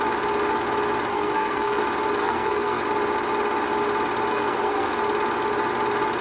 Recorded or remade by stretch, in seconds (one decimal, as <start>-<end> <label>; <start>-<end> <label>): 0.0-1.1 recorded; 1.1-1.8 remade; 1.8-2.2 recorded; 2.2-2.8 remade; 2.8-4.3 recorded; 4.3-4.9 remade; 4.9-6.2 recorded